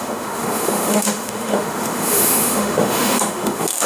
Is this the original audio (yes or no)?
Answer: no